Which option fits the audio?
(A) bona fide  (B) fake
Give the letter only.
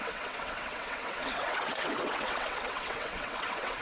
B